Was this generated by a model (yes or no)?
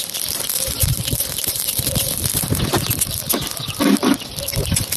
yes